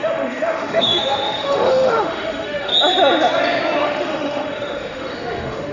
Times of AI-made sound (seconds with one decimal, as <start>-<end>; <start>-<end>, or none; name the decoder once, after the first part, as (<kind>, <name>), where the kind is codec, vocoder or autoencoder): 0.0-2.7 (autoencoder, DAC-VAE); 3.8-5.7